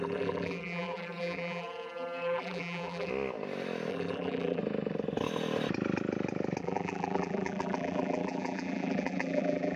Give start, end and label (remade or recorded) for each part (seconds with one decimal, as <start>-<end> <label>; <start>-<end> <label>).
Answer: 0.0-3.1 remade; 3.1-3.9 recorded; 3.9-4.6 remade; 4.6-6.6 recorded; 6.6-9.8 remade